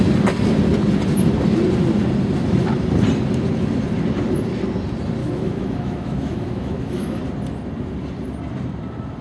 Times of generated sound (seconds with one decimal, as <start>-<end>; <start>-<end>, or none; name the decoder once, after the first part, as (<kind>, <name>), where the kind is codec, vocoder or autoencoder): 5.2-7.2 (autoencoder, DAC-VAE)